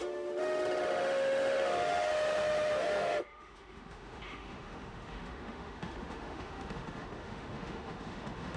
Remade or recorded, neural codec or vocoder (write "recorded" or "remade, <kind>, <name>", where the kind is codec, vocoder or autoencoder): remade, autoencoder, DAC-VAE